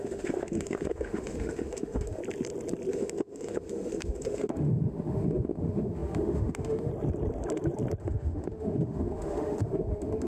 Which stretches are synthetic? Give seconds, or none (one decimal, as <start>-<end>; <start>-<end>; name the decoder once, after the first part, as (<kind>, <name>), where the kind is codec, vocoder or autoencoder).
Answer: 0.0-2.2 (autoencoder, DAC-VAE); 2.9-6.9; 8.0-10.3